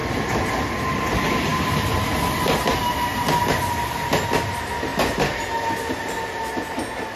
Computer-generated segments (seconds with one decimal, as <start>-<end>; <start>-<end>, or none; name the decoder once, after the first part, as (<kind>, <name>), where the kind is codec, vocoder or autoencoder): none